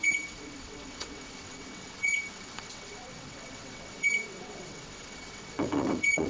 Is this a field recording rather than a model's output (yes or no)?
no